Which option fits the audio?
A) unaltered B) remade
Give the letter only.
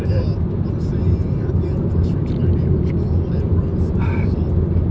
A